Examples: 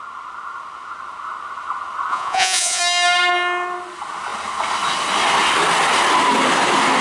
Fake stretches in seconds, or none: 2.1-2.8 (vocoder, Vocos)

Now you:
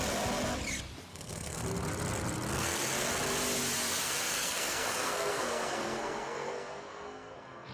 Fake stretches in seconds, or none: 1.1-1.6 (codec, SNAC); 2.5-3.1; 3.9-7.7

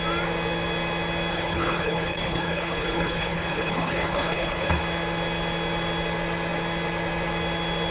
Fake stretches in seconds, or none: 1.3-4.8 (codec, HILCodec)